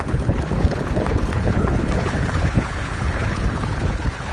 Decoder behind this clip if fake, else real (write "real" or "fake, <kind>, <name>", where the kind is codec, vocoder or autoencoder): fake, codec, HILCodec